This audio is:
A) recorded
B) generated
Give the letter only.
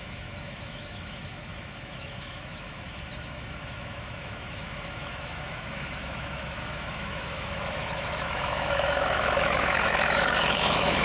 B